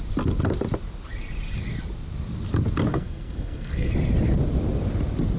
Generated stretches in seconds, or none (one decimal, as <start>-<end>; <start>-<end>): 2.9-3.9